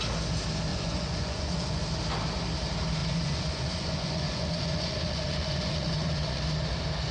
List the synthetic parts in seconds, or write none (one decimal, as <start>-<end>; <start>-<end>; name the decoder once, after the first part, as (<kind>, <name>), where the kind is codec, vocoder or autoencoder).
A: 0.7-1.8 (vocoder, Vocos); 3.0-6.4